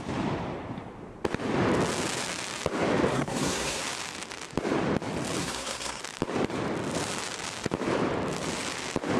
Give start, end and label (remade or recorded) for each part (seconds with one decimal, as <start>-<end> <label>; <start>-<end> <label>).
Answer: 0.0-3.1 recorded; 3.1-3.8 remade; 3.8-5.4 recorded; 5.4-6.0 remade; 6.0-9.2 recorded